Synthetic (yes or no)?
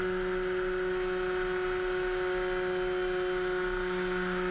no